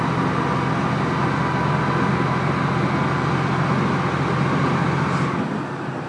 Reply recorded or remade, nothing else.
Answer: recorded